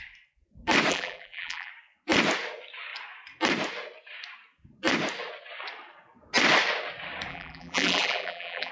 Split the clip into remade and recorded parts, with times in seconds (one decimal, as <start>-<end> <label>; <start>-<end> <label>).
0.0-0.9 recorded; 0.9-1.7 remade; 1.7-7.3 recorded; 7.3-8.7 remade